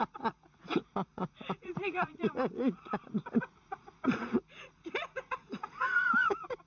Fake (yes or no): yes